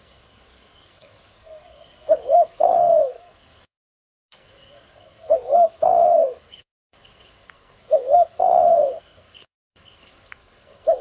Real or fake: fake